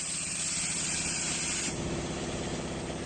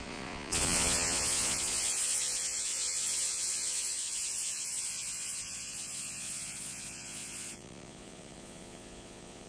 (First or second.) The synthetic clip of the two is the second